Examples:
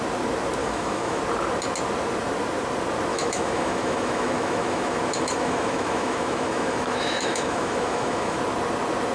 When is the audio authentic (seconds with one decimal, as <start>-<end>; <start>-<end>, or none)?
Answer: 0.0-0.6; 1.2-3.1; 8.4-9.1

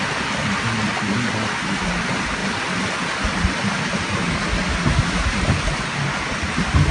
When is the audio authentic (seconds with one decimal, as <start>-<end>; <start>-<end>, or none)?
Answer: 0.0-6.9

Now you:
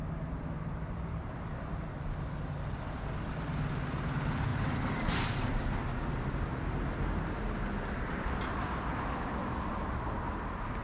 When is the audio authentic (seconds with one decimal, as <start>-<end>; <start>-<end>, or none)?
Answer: 0.0-4.5; 5.5-10.8